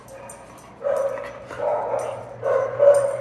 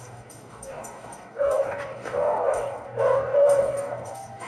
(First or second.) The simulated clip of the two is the second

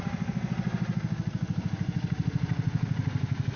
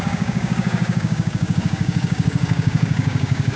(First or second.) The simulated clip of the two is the second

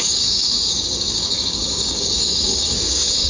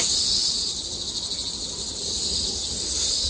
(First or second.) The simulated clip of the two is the first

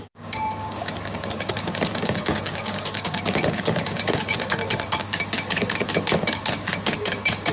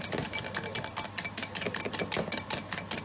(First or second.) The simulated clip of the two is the first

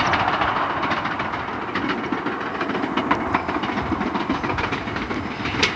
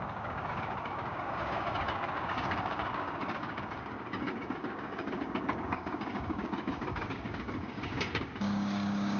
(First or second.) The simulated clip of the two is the second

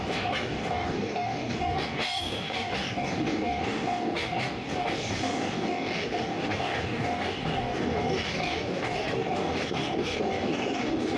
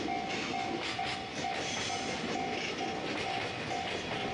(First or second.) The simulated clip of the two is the first